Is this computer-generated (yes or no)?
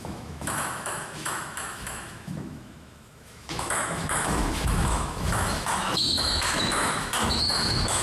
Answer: yes